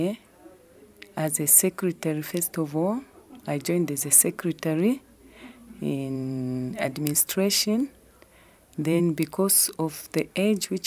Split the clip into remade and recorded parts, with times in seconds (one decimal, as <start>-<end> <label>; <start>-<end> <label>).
0.0-5.6 recorded; 5.6-9.0 remade; 9.0-10.9 recorded